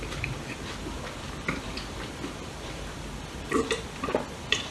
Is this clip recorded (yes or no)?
no